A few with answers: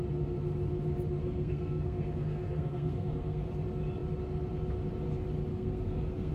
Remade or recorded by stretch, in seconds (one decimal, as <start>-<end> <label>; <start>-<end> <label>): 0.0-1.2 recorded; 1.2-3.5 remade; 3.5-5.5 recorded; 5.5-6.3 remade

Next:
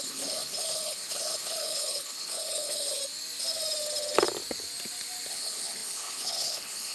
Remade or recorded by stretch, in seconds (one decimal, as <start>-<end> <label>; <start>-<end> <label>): 0.0-3.0 remade; 3.0-5.3 recorded; 5.3-6.9 remade

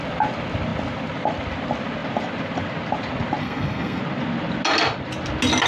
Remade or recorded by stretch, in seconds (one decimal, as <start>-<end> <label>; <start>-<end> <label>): 0.0-3.4 recorded; 3.4-4.0 remade; 4.0-5.7 recorded